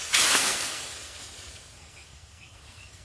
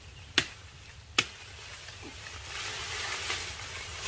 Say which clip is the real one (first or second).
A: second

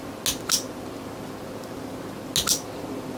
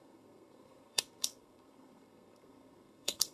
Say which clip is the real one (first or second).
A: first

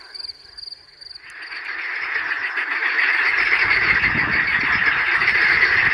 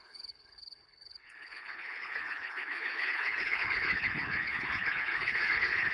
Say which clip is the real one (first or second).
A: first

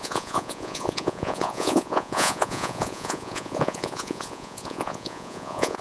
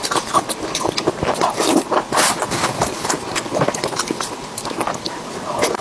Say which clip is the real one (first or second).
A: second